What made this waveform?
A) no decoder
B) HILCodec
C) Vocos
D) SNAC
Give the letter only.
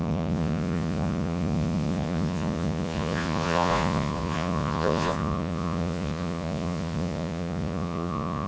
C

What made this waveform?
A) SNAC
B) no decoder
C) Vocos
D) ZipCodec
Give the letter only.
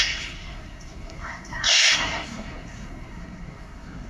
A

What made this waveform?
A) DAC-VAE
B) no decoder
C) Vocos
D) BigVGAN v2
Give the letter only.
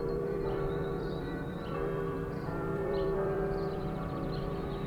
D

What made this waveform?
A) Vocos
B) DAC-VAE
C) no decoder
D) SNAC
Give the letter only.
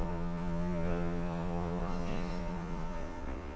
A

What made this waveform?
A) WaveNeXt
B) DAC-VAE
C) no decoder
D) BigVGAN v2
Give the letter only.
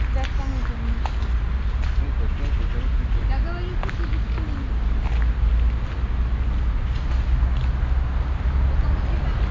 C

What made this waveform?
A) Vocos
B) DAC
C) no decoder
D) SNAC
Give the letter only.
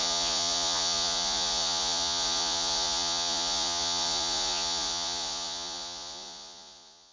A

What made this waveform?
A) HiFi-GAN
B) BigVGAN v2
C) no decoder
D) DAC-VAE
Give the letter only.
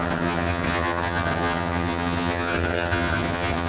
A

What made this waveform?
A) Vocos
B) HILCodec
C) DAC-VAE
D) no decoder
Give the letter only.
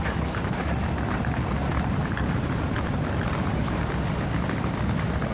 D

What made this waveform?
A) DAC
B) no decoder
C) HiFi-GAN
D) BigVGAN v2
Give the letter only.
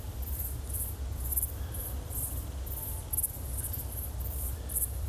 B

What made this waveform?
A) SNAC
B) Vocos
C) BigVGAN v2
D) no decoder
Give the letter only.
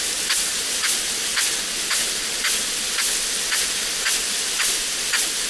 D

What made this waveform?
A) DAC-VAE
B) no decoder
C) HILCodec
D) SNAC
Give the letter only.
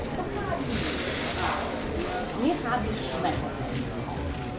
B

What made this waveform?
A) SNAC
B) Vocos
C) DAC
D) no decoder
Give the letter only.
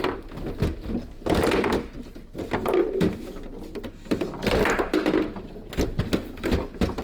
D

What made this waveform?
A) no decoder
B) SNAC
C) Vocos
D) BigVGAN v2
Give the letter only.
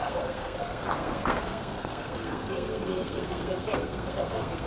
B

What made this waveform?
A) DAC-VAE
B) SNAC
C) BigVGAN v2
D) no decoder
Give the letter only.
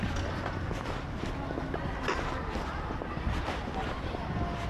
D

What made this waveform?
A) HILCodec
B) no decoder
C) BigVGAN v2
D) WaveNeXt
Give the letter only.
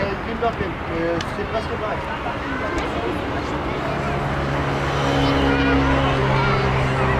B